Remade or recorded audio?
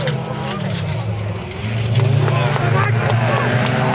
recorded